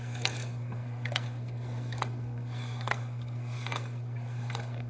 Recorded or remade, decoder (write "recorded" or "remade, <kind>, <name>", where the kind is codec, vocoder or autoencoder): remade, codec, SNAC